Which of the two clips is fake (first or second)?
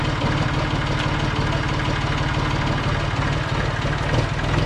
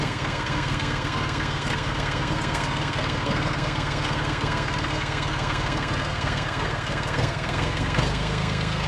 second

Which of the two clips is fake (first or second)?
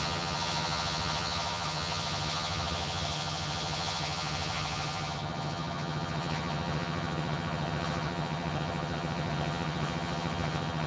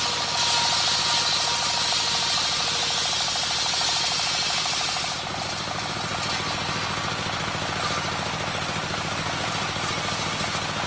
first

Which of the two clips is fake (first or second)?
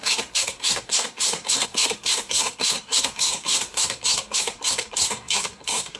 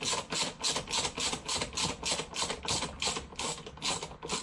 first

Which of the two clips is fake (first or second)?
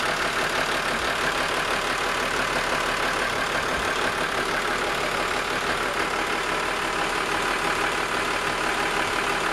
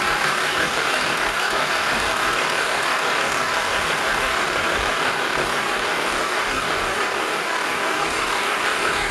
second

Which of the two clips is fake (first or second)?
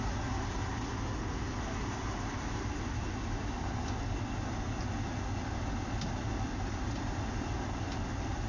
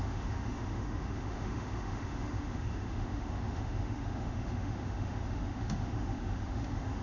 second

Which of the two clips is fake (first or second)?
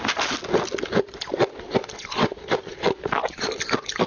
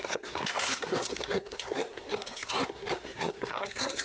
second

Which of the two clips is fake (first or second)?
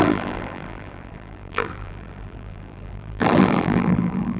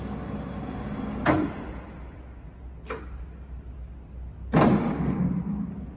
first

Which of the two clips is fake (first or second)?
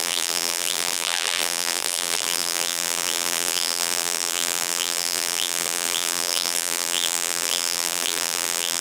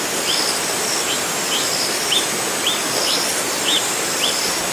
first